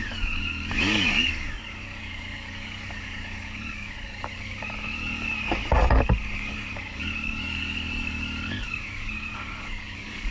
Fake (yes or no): yes